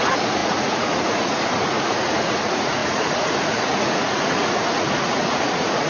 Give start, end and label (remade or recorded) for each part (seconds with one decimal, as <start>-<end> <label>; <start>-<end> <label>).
0.0-5.9 remade

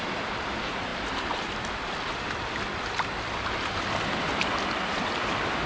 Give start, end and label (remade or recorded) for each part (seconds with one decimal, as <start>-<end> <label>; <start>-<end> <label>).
0.0-5.7 recorded

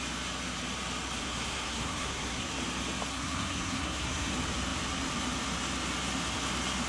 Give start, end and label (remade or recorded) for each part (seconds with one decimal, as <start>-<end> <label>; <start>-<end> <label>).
0.0-1.2 recorded; 1.2-2.5 remade; 2.5-3.1 recorded; 3.1-4.3 remade; 4.3-6.9 recorded